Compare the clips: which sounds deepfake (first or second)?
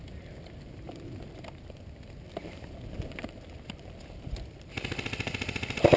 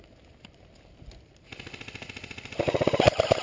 first